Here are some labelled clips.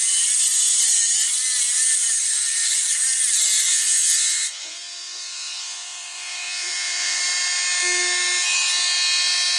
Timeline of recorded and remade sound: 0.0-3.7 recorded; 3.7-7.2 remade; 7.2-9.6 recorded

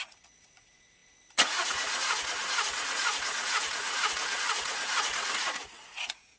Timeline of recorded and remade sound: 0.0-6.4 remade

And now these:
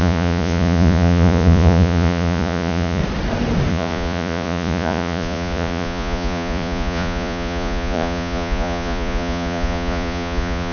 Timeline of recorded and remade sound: 0.0-3.0 remade; 3.0-3.7 recorded; 3.7-10.7 remade